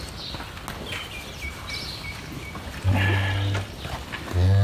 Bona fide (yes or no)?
yes